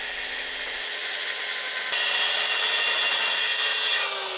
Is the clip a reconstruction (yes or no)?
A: no